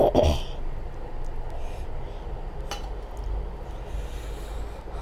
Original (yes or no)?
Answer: yes